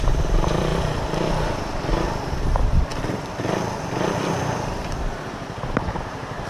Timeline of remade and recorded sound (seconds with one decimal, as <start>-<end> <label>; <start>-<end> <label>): 0.0-0.7 remade; 0.7-1.3 recorded; 1.3-6.5 remade